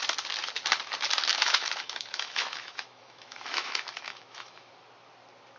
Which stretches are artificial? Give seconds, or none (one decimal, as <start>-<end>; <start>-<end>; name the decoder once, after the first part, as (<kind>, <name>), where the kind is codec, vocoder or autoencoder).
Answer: 1.3-4.7 (autoencoder, DAC-VAE)